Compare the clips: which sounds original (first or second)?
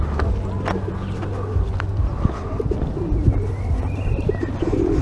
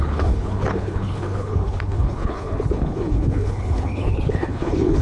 first